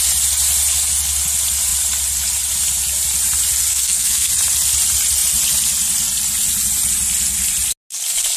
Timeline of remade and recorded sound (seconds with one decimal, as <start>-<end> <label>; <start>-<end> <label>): 0.0-3.7 recorded; 3.7-4.3 remade; 4.3-8.4 recorded